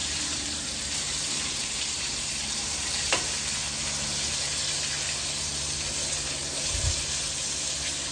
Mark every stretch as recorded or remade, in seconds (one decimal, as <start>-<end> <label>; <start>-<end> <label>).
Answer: 0.0-3.3 remade; 3.3-6.4 recorded; 6.4-7.2 remade; 7.2-8.1 recorded